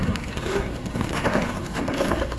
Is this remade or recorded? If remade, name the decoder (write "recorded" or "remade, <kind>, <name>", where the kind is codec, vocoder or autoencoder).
remade, codec, SNAC